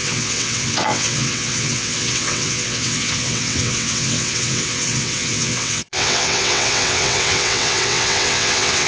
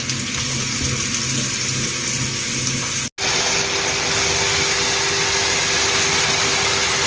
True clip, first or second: second